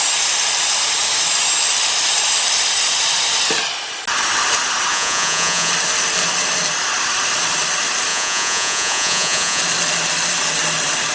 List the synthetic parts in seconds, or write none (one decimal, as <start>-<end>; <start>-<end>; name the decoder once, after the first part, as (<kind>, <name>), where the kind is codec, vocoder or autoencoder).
4.9-5.7 (vocoder, Vocos); 8.1-9.6